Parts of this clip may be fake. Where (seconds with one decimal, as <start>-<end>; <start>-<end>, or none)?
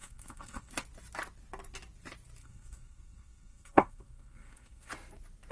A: 0.0-0.7; 2.4-4.9